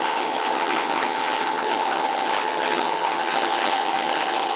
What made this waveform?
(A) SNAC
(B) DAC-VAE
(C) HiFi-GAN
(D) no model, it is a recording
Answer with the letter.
C